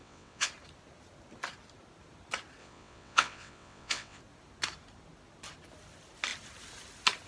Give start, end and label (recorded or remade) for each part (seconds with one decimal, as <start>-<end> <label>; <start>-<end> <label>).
0.0-0.5 remade; 0.5-2.6 recorded; 2.6-4.2 remade; 4.2-7.3 recorded